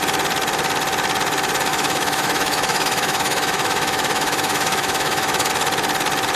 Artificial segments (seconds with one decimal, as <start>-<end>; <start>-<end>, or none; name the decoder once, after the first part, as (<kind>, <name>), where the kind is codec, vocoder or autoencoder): 1.7-5.5 (autoencoder, DAC-VAE)